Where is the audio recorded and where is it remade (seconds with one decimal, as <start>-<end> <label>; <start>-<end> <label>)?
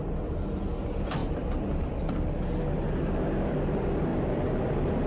0.0-1.2 recorded; 1.2-2.1 remade; 2.1-4.1 recorded; 4.1-5.1 remade